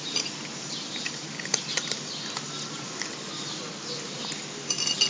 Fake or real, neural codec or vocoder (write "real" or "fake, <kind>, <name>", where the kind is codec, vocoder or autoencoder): real